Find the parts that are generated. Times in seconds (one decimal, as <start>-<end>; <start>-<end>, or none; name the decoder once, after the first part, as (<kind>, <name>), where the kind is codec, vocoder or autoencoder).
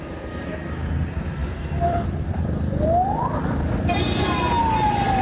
1.4-4.5 (vocoder, BigVGAN v2)